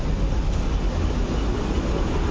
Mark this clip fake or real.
real